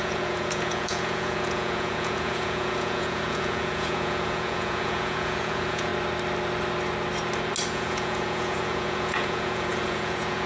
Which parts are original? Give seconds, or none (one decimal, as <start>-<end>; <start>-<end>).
5.9-7.7